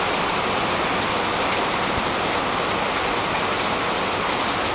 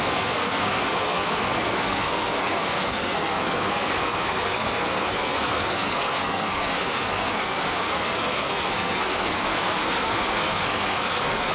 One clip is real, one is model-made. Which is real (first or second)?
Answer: first